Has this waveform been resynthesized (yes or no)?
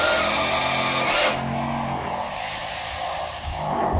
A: no